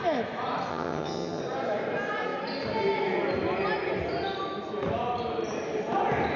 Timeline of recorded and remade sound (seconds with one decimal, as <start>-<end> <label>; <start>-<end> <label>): 0.0-0.7 recorded; 0.7-1.4 remade; 1.4-6.4 recorded